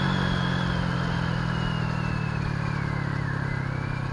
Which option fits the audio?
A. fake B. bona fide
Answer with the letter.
B